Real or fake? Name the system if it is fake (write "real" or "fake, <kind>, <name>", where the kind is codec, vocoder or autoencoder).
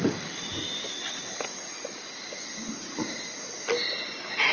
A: real